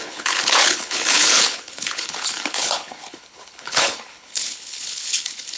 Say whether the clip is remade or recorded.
remade